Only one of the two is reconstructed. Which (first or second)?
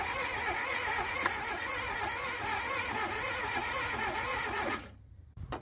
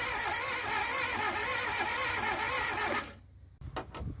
first